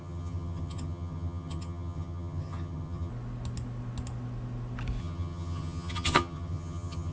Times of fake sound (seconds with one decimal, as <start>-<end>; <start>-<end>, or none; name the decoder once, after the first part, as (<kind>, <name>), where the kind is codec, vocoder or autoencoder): 0.0-3.1 (vocoder, HiFi-GAN); 5.0-7.1